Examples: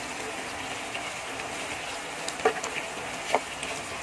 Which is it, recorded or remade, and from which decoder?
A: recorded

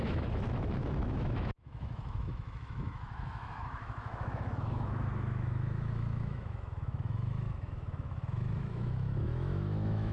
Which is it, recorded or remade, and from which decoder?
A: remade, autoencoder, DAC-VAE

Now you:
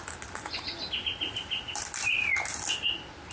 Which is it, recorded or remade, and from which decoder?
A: recorded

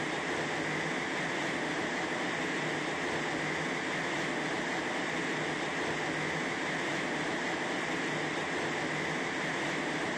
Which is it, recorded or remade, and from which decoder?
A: recorded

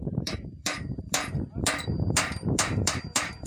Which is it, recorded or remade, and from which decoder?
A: remade, vocoder, BigVGAN v2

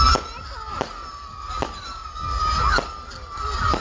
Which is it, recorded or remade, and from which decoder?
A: recorded